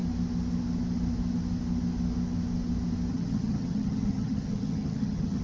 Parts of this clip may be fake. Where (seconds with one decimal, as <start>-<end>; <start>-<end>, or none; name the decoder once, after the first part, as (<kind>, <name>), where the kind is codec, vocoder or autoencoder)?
3.1-5.4 (vocoder, HiFi-GAN)